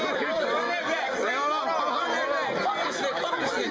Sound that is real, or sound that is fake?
real